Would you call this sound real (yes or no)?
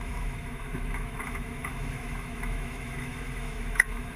no